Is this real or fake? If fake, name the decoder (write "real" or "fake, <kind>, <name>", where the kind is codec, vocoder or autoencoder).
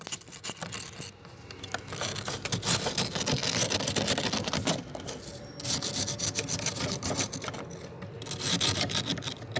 real